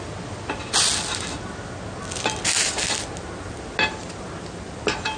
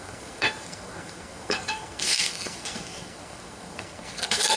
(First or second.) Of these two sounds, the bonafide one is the first